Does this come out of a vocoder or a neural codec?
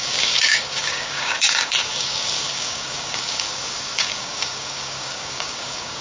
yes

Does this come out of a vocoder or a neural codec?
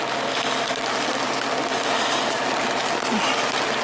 no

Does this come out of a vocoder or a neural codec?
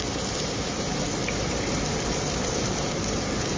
yes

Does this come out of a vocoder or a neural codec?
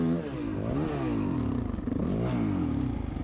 no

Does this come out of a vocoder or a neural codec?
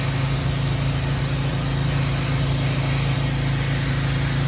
no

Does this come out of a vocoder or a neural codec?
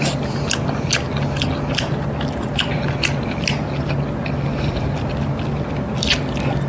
no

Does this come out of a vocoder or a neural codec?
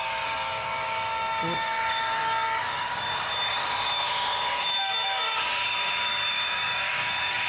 yes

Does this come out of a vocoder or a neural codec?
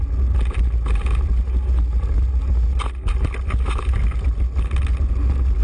no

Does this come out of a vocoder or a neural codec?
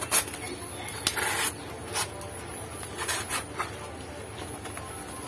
no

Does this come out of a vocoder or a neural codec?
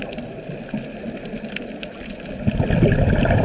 no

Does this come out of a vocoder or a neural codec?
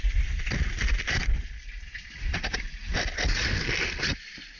no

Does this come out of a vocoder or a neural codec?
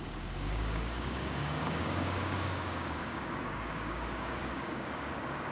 yes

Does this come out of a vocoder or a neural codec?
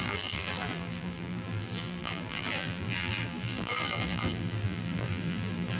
yes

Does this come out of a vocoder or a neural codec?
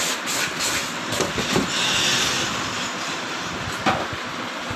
no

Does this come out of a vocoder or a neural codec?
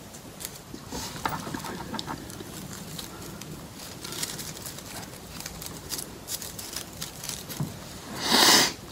yes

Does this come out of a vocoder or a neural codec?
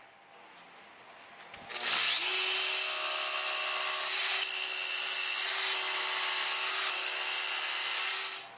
no